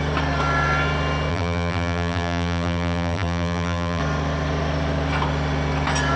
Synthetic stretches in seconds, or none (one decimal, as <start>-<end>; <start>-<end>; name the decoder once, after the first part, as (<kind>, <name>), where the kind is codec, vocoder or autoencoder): 1.3-4.0 (vocoder, BigVGAN v2)